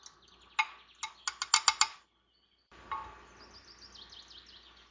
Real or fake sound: real